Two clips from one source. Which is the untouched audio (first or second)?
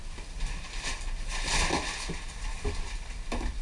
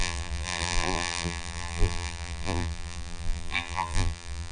first